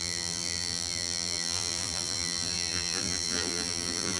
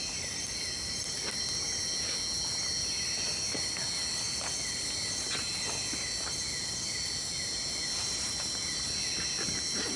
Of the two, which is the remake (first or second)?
first